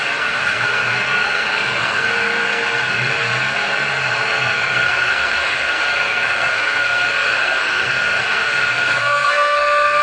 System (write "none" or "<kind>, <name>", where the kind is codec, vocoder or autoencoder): codec, SNAC